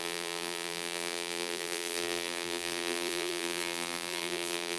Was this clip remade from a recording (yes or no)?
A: yes